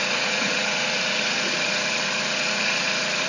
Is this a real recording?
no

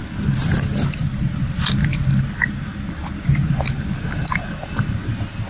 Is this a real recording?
yes